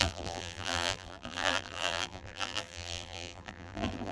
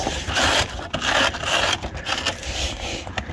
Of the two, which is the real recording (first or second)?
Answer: second